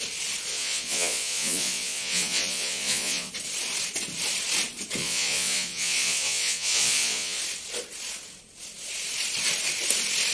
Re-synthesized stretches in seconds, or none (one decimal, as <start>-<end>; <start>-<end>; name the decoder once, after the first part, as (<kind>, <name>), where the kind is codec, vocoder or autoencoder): 0.5-3.3 (vocoder, Vocos); 5.0-7.4